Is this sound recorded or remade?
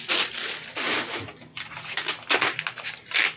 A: recorded